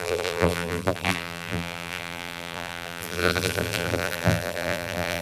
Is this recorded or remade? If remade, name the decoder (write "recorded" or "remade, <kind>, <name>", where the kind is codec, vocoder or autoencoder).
remade, vocoder, BigVGAN v2